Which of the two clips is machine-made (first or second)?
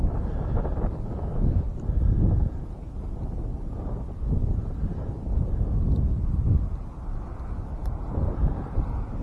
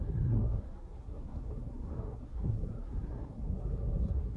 second